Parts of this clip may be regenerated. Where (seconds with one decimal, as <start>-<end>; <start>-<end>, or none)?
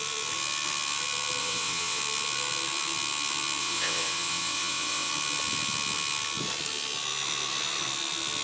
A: 1.4-2.0; 3.6-5.1